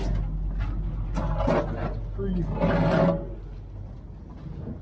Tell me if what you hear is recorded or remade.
recorded